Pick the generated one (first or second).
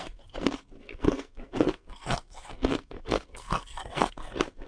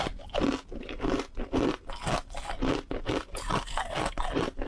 first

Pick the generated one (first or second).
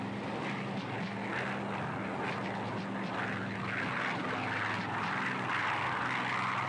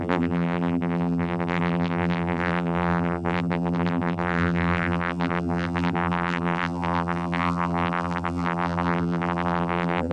second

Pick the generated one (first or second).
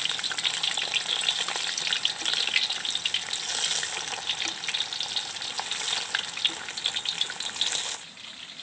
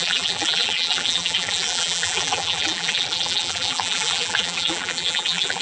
second